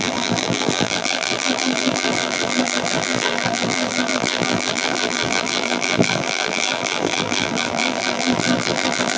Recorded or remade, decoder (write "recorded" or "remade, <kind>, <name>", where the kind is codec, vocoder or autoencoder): remade, vocoder, BigVGAN v2